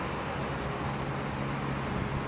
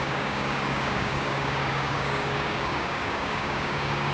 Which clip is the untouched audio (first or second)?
first